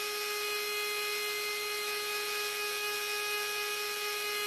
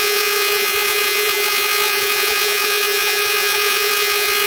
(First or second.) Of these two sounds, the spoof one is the second